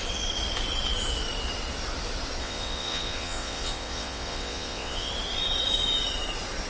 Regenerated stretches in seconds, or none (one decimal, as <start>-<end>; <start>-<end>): 2.4-5.1